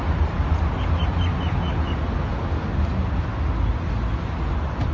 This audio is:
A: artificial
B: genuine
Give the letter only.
B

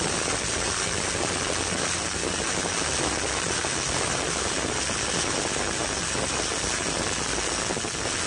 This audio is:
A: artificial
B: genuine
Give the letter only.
B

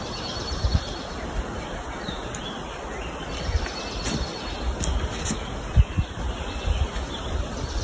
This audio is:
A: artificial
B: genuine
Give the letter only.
B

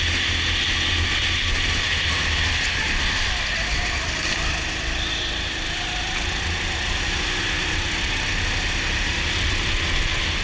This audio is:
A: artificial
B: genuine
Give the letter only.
B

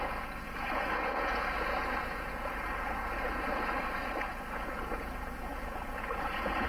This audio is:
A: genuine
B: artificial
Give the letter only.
B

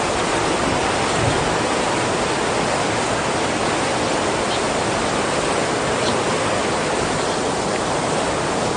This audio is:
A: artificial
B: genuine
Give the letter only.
B